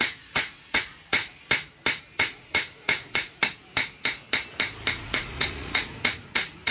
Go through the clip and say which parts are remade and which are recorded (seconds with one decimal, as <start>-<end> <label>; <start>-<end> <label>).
0.0-1.2 remade; 1.2-2.1 recorded; 2.1-3.4 remade; 3.4-4.9 recorded; 4.9-6.7 remade